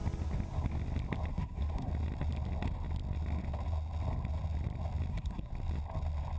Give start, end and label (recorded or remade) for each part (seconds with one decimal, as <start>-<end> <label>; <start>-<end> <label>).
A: 0.0-1.3 recorded; 1.3-1.9 remade; 1.9-5.1 recorded; 5.1-5.5 remade; 5.5-6.4 recorded